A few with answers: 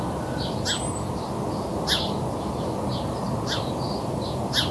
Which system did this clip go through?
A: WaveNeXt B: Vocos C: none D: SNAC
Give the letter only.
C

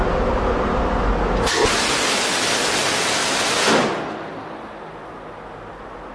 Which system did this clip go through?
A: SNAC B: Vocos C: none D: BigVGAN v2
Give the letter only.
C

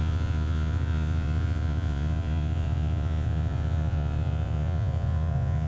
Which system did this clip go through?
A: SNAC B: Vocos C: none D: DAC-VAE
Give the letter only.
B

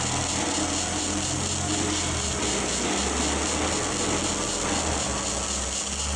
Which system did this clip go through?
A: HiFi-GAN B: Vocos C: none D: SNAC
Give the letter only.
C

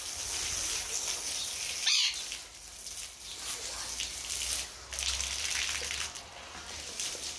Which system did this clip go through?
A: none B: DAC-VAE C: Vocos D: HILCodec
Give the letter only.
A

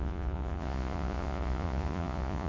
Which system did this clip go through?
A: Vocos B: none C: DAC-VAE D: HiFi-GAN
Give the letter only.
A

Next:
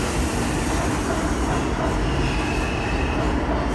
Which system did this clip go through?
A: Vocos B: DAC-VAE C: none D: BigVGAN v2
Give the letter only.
C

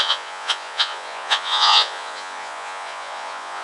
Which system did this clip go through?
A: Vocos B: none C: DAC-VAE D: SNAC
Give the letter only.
A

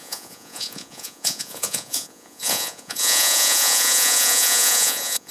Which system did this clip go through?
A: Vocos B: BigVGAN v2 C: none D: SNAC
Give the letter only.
A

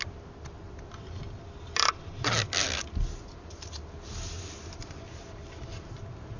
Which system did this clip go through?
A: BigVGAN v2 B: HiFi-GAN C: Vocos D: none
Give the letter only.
D